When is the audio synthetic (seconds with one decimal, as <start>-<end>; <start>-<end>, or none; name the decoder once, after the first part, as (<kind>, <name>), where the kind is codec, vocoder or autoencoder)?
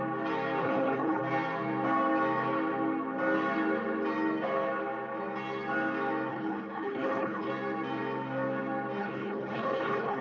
0.6-1.2 (codec, HILCodec); 6.3-7.5; 9.0-10.2